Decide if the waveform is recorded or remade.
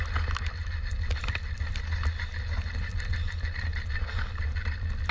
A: recorded